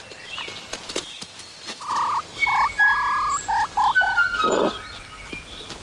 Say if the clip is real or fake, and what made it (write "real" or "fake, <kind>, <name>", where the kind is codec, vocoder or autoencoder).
real